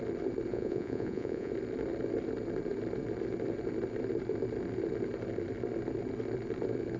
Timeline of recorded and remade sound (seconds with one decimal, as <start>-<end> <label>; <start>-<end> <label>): 0.0-0.5 recorded; 0.5-1.5 remade; 1.5-7.0 recorded